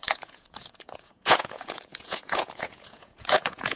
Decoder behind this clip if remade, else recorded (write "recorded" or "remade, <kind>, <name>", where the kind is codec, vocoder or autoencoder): remade, vocoder, Vocos